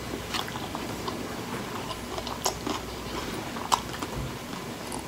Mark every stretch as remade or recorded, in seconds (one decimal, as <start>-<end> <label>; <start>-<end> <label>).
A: 0.0-3.6 remade; 3.6-4.6 recorded; 4.6-5.1 remade